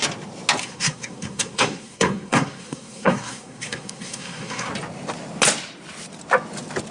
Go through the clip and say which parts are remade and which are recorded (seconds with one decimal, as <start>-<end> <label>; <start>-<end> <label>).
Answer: 0.0-0.6 recorded; 0.6-4.7 remade; 4.7-6.9 recorded